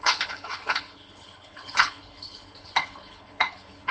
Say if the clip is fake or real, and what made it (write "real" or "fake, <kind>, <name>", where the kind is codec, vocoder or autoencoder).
fake, codec, HILCodec